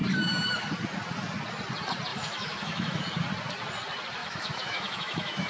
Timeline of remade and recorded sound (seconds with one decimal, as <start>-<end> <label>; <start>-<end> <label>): 0.0-2.1 recorded; 2.1-3.0 remade; 3.0-4.2 recorded; 4.2-5.5 remade